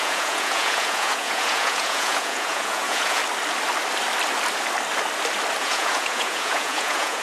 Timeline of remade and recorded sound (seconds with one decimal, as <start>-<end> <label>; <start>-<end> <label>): 0.0-3.2 remade; 3.2-5.6 recorded; 5.6-7.2 remade